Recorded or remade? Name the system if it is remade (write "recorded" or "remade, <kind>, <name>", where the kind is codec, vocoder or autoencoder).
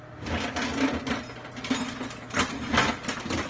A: recorded